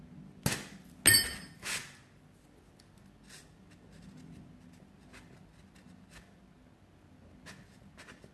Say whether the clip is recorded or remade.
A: recorded